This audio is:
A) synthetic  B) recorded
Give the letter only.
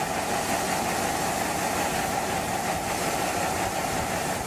B